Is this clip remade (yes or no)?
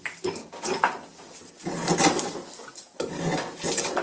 no